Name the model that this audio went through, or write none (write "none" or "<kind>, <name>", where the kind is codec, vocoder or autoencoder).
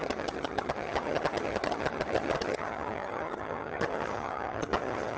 vocoder, HiFi-GAN